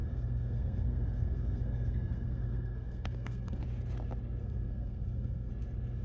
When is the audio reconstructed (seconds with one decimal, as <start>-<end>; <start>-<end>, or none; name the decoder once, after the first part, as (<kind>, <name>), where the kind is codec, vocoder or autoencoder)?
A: 0.0-3.6 (codec, SNAC); 4.4-5.5